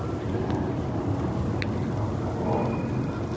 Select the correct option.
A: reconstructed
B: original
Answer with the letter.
B